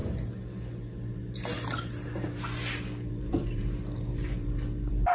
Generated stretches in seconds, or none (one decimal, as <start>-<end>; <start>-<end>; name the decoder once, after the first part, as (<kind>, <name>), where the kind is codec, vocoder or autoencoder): 3.1-5.1 (vocoder, BigVGAN v2)